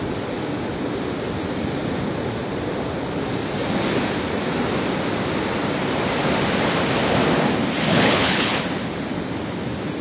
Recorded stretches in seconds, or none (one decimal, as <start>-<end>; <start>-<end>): 0.0-7.9; 8.5-10.0